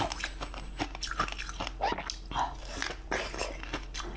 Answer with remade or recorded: recorded